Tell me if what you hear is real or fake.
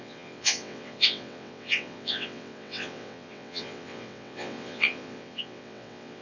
fake